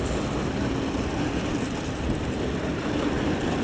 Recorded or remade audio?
recorded